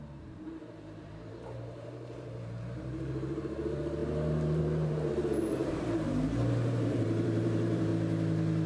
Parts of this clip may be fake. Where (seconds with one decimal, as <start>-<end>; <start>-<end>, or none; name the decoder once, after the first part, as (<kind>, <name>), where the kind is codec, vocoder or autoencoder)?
0.0-7.9 (vocoder, BigVGAN v2)